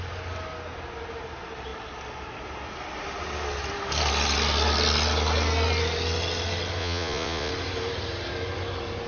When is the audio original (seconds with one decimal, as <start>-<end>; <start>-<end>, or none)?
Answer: 0.0-6.8; 7.5-9.1